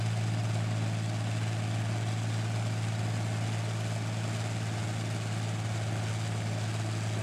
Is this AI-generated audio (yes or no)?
no